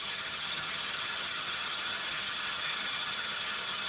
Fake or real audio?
fake